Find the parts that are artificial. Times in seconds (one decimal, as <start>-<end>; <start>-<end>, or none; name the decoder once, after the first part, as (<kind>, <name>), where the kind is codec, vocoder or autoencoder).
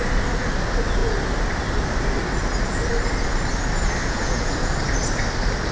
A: 4.0-4.7 (vocoder, Vocos)